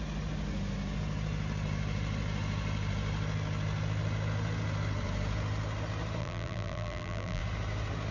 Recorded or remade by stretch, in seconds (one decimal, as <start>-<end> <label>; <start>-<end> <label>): 0.0-6.2 recorded; 6.2-7.4 remade; 7.4-8.1 recorded